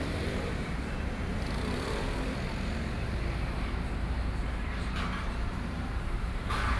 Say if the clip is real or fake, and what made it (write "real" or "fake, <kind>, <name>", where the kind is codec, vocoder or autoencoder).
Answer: fake, vocoder, BigVGAN v2